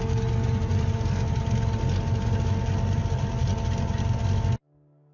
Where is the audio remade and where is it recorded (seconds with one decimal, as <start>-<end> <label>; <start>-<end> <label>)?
0.0-0.7 recorded; 0.7-1.4 remade; 1.4-3.0 recorded; 3.0-3.5 remade; 3.5-5.1 recorded